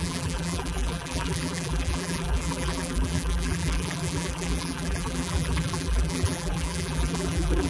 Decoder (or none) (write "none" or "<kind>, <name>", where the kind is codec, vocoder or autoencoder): vocoder, BigVGAN v2